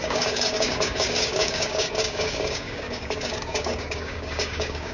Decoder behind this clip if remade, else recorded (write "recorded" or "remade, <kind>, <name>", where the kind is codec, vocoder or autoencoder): remade, codec, DAC